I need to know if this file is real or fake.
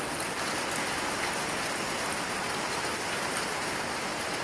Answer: real